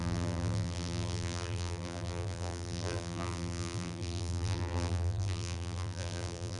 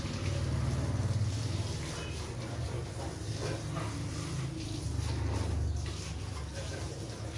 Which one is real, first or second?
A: second